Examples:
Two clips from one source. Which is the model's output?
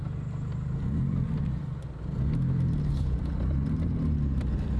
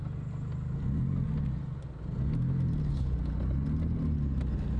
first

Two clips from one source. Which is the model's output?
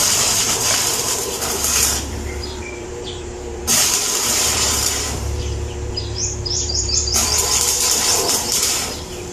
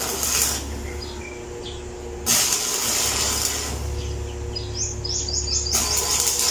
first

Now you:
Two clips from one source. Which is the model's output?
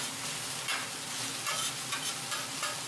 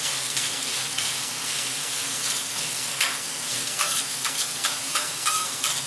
second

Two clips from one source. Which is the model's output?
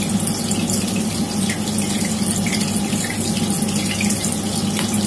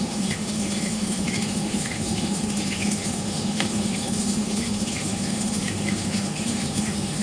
second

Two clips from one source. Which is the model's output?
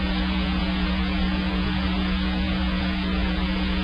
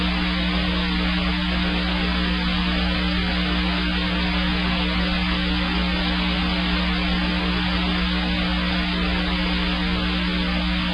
first